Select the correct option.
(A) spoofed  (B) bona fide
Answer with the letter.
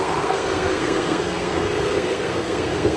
A